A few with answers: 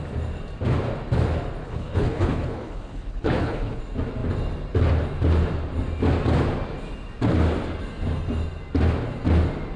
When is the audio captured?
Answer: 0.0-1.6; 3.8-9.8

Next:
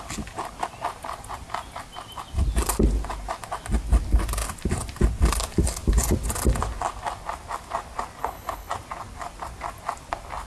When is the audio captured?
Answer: 0.0-8.2; 8.7-10.5

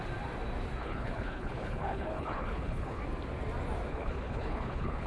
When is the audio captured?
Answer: 0.0-0.8; 3.0-3.9

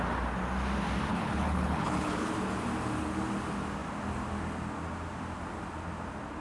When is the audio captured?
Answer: 0.0-1.1; 2.3-6.4

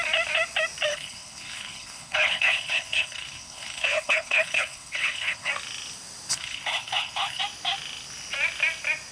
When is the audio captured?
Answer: 0.0-0.9; 5.5-6.3; 7.4-9.1

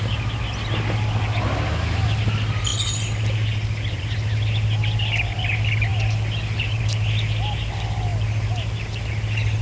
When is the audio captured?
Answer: 0.0-9.6